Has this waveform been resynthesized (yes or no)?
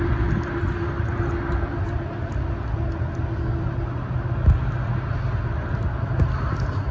no